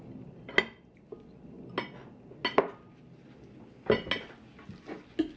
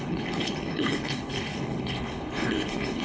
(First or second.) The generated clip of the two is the second